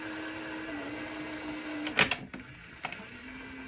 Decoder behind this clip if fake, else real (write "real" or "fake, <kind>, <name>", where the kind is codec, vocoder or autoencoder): real